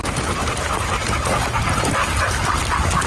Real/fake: real